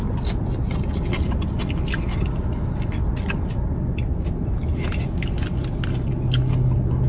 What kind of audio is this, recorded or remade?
recorded